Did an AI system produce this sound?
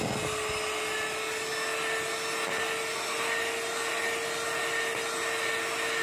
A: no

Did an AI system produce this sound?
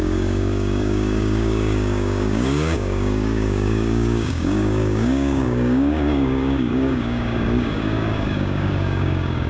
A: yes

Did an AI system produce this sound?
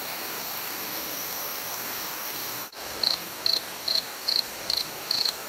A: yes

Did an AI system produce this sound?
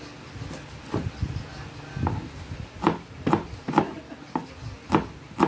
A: no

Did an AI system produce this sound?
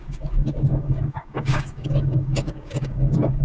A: yes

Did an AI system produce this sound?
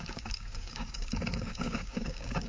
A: yes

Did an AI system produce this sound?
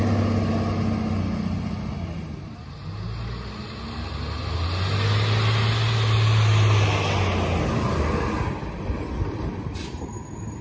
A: no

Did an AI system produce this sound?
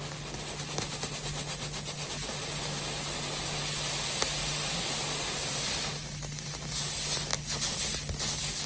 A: no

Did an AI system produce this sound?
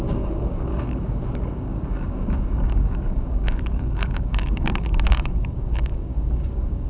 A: yes